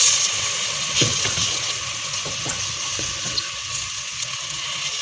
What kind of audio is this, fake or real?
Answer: fake